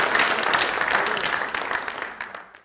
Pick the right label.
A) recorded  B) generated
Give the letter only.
A